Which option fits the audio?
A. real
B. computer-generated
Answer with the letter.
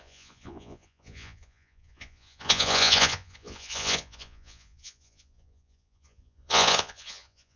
B